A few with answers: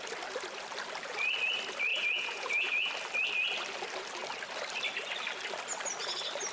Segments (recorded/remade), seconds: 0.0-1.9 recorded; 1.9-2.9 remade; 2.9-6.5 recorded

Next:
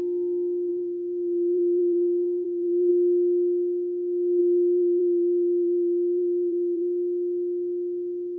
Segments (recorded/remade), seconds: 0.0-0.7 recorded; 0.7-2.9 remade; 2.9-4.4 recorded; 4.4-6.8 remade; 6.8-8.4 recorded